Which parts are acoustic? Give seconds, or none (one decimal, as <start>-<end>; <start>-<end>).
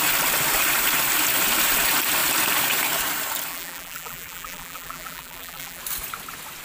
0.0-3.5; 5.8-6.6